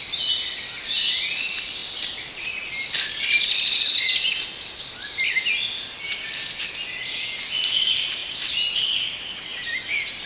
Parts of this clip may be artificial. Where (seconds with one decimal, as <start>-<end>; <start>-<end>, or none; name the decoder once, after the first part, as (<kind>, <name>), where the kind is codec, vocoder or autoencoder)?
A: none